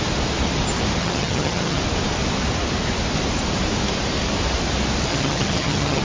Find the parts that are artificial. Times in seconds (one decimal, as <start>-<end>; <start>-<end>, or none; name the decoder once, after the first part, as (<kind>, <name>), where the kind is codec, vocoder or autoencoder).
1.0-1.8 (vocoder, HiFi-GAN); 5.1-6.0